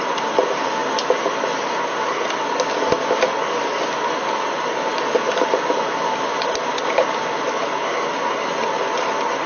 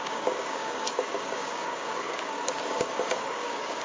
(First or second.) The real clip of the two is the first